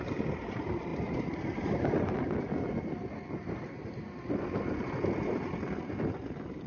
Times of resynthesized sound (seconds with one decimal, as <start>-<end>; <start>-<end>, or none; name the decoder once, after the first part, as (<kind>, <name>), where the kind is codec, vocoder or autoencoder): none